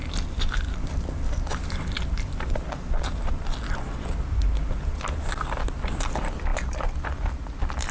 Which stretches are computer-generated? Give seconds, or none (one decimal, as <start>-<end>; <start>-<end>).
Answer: 0.0-1.5; 6.5-7.9